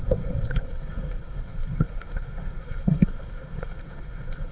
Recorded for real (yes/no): no